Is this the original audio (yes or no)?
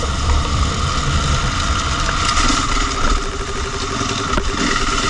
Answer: yes